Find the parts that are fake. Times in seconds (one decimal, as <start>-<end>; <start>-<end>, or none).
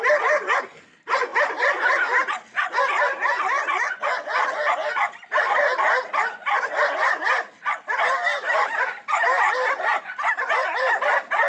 8.3-11.1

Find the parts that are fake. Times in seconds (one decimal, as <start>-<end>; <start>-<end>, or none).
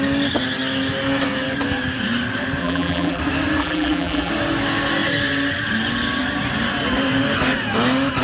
2.6-3.2; 3.6-4.3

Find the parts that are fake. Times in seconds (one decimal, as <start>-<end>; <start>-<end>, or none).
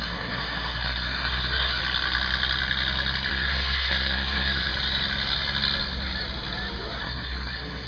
0.0-1.8; 3.3-4.7; 7.0-7.9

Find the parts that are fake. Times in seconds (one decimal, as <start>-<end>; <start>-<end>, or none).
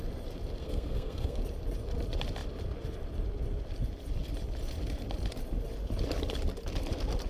0.6-1.4